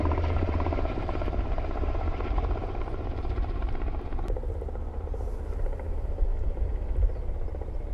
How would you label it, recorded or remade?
remade